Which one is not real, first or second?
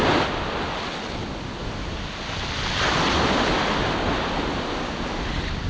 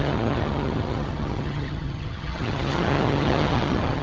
second